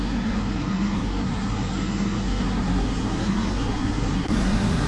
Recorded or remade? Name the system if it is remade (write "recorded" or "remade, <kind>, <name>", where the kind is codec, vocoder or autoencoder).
remade, codec, SNAC